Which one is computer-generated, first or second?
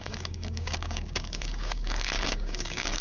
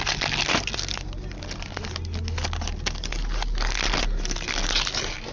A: first